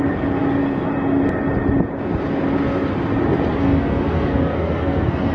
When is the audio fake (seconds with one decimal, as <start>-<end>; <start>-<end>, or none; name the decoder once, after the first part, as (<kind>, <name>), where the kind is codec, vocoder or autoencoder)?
3.6-5.3 (codec, SNAC)